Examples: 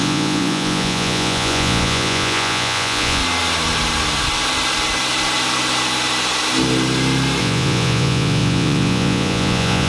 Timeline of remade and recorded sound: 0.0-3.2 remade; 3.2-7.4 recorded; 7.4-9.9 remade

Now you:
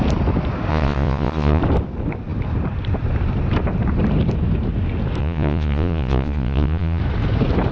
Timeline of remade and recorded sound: 0.0-0.7 recorded; 0.7-1.6 remade; 1.6-5.2 recorded; 5.2-7.0 remade; 7.0-7.7 recorded

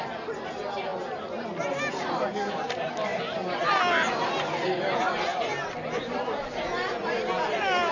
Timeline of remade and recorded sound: 0.0-7.9 recorded